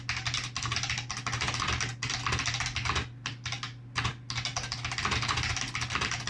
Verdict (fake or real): real